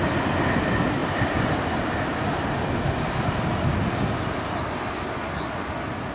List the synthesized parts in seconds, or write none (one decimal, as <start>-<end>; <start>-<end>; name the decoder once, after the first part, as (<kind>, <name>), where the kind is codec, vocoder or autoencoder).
none